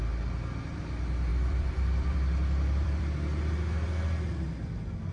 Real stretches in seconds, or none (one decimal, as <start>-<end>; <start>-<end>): 0.0-1.3; 3.4-5.1